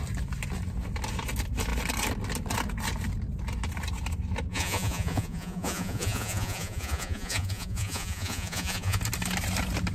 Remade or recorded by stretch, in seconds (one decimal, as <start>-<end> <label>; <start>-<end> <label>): 0.0-4.5 recorded; 4.5-9.0 remade; 9.0-9.9 recorded

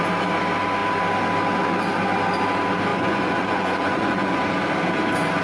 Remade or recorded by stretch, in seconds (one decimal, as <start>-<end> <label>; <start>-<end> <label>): 0.0-2.9 recorded; 2.9-4.4 remade; 4.4-5.4 recorded

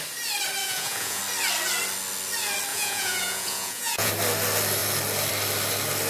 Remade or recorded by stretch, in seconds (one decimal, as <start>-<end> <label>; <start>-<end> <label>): 0.0-0.6 recorded; 0.6-1.2 remade; 1.2-2.7 recorded; 2.7-4.1 remade; 4.1-6.1 recorded

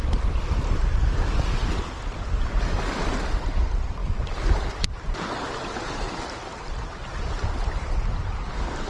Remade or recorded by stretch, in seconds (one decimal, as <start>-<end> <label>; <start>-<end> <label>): 0.0-8.9 recorded

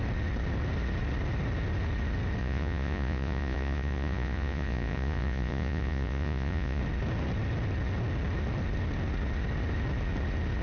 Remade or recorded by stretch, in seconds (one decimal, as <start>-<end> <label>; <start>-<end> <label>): 0.0-2.4 recorded; 2.4-6.8 remade; 6.8-10.6 recorded